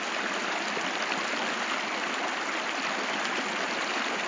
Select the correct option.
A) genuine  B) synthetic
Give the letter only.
A